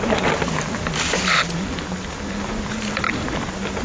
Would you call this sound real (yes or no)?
yes